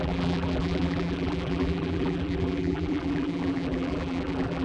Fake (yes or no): yes